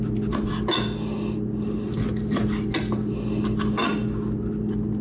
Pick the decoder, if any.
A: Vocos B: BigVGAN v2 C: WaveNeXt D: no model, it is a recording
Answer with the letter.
D